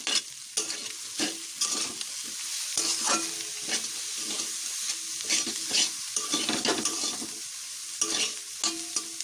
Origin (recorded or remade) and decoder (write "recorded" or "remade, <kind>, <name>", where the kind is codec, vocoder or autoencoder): recorded